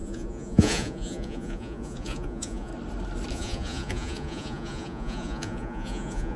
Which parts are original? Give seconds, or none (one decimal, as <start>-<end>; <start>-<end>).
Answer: 2.7-3.3